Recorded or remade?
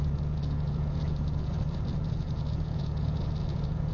remade